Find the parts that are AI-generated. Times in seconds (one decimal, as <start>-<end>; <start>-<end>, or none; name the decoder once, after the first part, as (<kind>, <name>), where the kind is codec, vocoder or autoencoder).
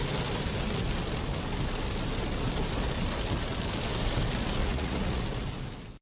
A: 4.6-5.2 (vocoder, Vocos)